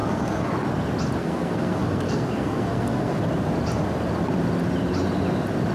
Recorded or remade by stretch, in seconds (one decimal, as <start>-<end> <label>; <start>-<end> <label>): 0.0-0.5 remade; 0.5-1.2 recorded; 1.2-3.2 remade; 3.2-5.7 recorded